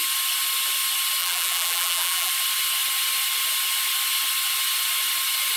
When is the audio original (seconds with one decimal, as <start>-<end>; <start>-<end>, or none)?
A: 0.0-1.2; 2.3-5.6